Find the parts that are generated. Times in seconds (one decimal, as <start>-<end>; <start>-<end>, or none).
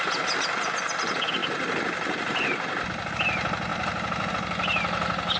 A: 3.7-4.3